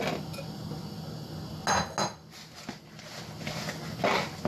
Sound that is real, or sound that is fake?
real